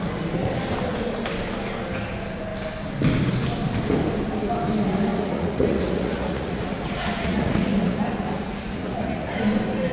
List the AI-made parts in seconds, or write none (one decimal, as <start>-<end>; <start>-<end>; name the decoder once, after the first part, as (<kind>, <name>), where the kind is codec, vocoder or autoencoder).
5.1-9.4 (vocoder, Vocos)